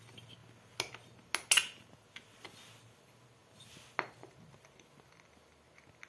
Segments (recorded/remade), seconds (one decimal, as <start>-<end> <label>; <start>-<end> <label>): 0.0-6.1 recorded